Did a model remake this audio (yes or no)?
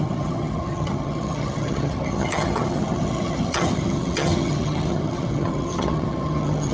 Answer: yes